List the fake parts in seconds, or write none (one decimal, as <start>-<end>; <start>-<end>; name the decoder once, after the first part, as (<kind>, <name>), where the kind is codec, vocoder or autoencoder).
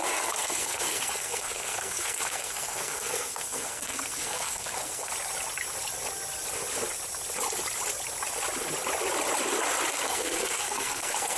0.0-5.1 (codec, SNAC); 9.9-11.4